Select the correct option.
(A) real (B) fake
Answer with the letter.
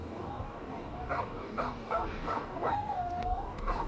B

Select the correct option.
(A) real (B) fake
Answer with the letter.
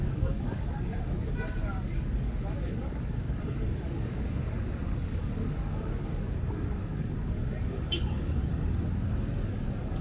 B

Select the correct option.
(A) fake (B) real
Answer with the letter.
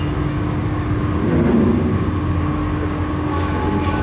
A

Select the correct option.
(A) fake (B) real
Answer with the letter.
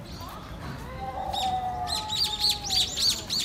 B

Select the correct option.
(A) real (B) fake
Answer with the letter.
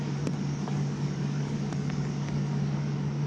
B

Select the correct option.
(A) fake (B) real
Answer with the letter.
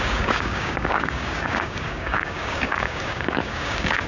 A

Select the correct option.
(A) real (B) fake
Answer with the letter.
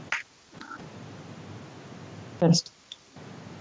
A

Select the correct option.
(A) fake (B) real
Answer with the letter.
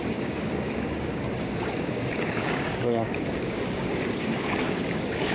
A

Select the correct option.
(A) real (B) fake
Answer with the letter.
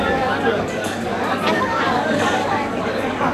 B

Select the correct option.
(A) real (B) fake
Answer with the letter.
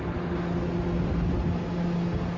A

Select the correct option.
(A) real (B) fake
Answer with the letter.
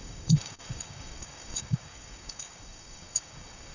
B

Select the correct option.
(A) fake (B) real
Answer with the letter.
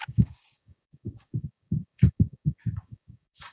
A